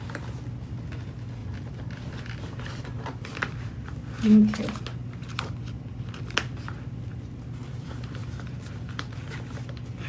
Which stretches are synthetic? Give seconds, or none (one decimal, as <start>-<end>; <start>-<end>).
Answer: 1.4-4.0; 8.2-9.1